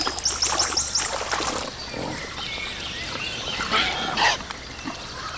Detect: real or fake real